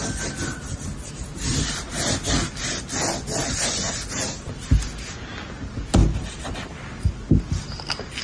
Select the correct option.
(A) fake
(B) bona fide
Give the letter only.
B